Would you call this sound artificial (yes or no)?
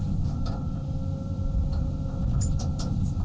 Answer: yes